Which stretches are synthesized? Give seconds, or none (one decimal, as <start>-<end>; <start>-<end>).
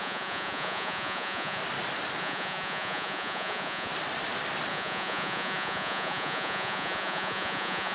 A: 0.0-1.6; 2.2-3.9; 4.7-7.9